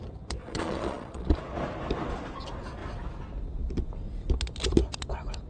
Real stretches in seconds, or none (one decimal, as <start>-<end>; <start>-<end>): 0.0-0.4; 1.4-5.5